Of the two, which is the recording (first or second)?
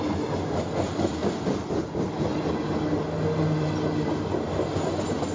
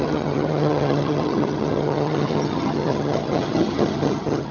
first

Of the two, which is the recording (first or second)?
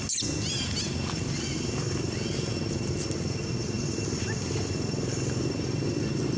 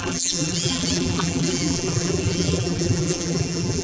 first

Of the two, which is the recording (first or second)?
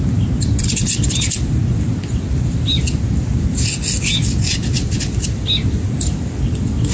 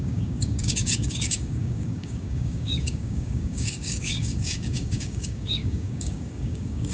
first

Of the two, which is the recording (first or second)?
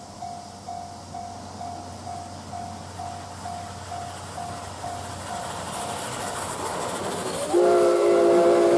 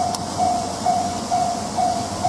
first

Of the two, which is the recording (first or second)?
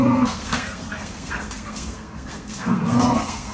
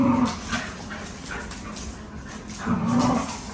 second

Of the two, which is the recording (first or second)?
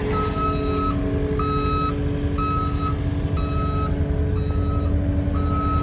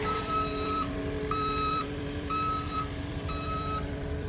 first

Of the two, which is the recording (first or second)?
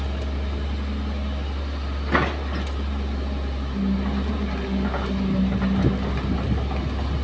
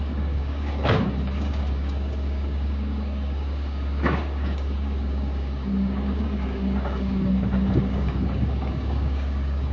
first